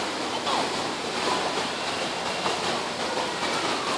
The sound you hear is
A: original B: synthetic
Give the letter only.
A